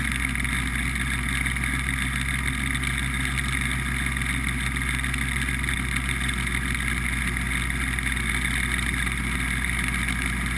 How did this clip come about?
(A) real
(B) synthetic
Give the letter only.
A